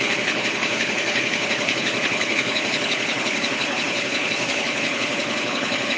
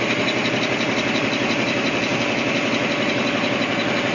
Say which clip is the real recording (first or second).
second